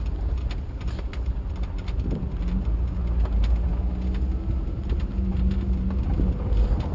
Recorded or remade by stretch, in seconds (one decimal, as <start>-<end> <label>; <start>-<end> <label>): 0.0-6.9 recorded